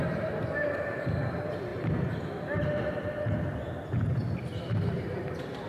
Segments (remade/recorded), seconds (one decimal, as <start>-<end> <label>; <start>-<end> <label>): 0.0-1.7 remade; 1.7-2.8 recorded; 2.8-5.7 remade